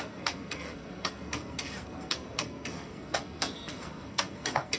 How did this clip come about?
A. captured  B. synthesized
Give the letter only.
B